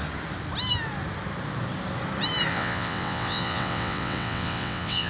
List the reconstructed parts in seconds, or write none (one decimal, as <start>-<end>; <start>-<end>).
2.5-5.1